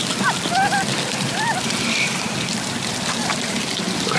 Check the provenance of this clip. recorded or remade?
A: recorded